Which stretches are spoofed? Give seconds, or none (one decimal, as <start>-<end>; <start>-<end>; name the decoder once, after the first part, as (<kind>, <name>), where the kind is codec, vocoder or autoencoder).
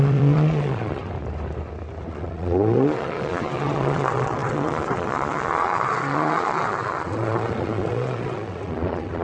0.0-1.0 (vocoder, Vocos); 2.1-9.2